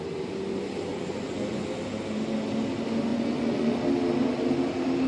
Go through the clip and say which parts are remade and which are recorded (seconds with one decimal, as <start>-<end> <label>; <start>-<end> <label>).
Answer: 0.0-0.9 recorded; 0.9-1.6 remade; 1.6-3.1 recorded; 3.1-3.7 remade; 3.7-5.1 recorded